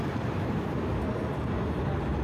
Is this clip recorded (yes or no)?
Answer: no